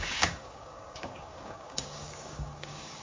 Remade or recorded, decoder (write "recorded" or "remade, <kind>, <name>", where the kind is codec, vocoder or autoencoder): remade, codec, DAC